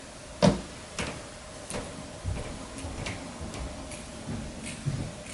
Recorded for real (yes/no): yes